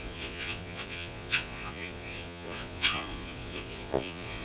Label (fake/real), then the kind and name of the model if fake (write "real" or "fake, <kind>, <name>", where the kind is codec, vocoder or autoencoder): fake, vocoder, Vocos